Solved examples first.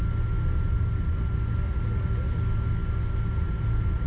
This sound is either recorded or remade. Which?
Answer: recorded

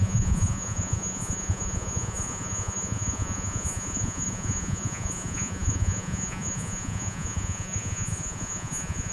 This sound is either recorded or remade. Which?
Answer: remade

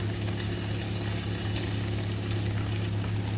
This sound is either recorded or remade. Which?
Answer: recorded